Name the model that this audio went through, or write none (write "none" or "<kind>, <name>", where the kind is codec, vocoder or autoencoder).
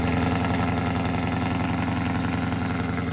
none